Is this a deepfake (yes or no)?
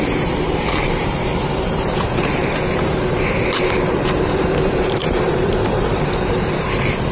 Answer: yes